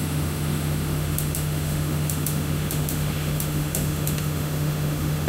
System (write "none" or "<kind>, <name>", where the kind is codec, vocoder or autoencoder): autoencoder, DAC-VAE